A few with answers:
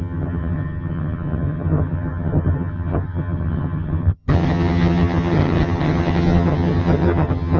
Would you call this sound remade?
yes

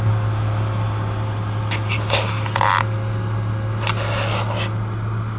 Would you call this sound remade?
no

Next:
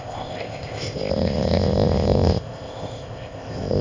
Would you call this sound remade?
yes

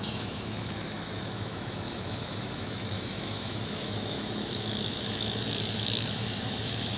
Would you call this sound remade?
yes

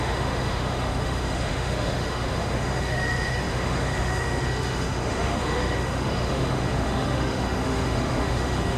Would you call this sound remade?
yes